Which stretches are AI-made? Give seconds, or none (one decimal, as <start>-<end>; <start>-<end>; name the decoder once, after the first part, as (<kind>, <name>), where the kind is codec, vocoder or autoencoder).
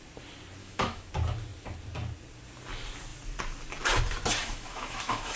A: 0.6-1.1 (autoencoder, DAC-VAE); 4.4-5.4